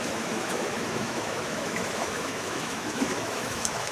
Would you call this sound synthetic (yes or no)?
yes